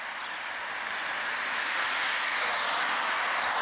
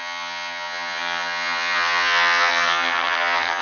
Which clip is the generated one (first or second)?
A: second